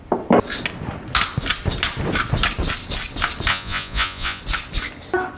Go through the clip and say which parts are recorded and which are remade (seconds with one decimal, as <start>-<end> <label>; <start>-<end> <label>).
0.0-3.5 recorded; 3.5-4.4 remade; 4.4-5.4 recorded